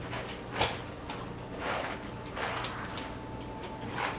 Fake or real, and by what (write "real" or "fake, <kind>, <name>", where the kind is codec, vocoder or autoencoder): real